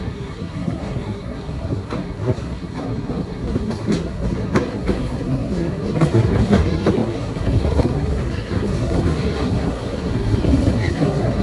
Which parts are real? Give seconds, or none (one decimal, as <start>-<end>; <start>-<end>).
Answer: none